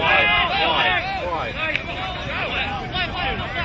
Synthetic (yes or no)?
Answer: yes